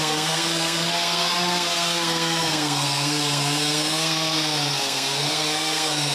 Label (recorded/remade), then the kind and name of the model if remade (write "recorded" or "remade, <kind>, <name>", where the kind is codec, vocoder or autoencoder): remade, codec, SNAC